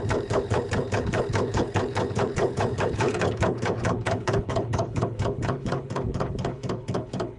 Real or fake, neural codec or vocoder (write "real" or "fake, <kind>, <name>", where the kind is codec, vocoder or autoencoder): fake, codec, HILCodec